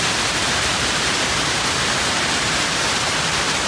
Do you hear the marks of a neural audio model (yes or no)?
yes